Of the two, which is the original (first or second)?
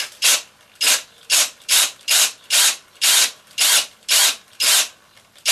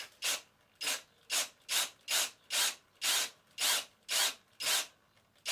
second